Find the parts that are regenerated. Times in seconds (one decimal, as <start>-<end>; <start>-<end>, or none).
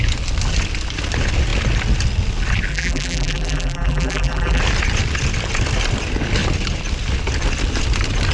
2.7-4.6